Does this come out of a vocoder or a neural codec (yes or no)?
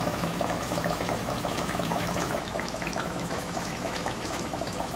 yes